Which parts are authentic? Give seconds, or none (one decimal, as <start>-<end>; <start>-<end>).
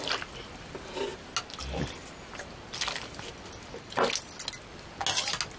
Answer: 0.0-5.6